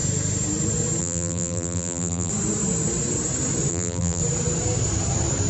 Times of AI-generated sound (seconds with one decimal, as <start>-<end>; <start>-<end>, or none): 1.0-2.3; 3.7-4.2